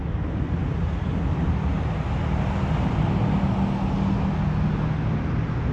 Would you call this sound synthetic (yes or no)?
no